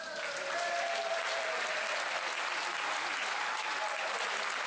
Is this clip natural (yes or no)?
yes